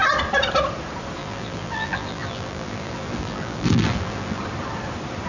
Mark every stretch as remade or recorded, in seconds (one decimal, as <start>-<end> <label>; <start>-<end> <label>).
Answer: 0.0-1.2 recorded; 1.2-4.4 remade; 4.4-5.3 recorded